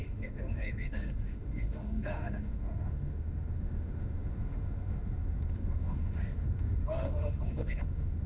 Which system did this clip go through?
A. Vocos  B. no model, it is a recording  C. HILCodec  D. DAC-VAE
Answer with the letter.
D